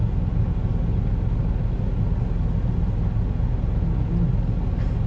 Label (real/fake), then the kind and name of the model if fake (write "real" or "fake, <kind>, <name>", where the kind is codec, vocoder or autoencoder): real